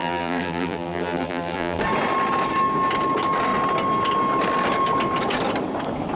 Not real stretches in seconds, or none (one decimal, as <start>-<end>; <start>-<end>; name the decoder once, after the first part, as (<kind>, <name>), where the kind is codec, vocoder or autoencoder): 0.0-1.8 (vocoder, BigVGAN v2)